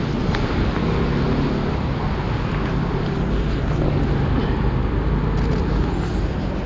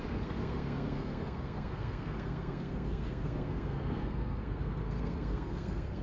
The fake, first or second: second